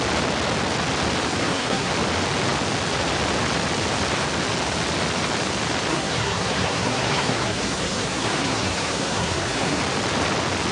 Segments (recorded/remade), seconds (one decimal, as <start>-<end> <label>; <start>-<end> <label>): 0.0-1.4 recorded; 1.4-1.9 remade; 1.9-5.9 recorded; 5.9-9.8 remade; 9.8-10.7 recorded